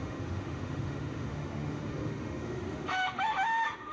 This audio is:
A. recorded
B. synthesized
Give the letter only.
B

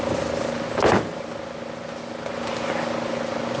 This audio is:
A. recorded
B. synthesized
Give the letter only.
A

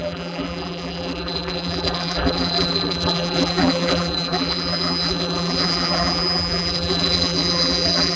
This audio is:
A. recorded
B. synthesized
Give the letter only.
B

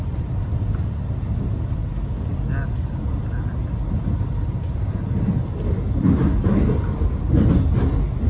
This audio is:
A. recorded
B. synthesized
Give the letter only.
A